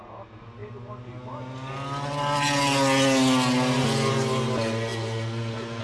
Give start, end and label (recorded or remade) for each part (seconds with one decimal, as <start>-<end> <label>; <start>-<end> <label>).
0.0-5.8 recorded